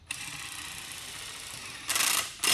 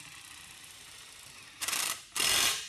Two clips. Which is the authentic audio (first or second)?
first